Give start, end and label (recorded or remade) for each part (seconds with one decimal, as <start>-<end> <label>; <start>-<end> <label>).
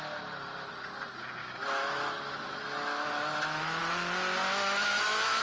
0.0-1.4 recorded; 1.4-3.8 remade; 3.8-4.4 recorded; 4.4-5.4 remade